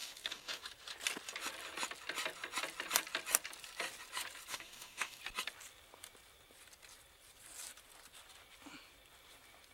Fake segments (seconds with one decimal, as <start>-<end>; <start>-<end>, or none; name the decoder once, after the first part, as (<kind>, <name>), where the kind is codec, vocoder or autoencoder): 0.0-0.6 (codec, DAC); 4.5-5.2